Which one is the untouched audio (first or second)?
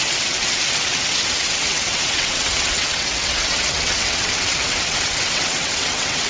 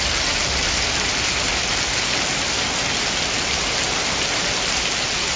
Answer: second